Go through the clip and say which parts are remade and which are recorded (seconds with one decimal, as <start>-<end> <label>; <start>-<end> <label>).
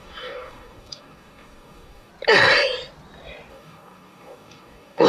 0.0-2.1 remade; 2.1-3.5 recorded; 3.5-5.1 remade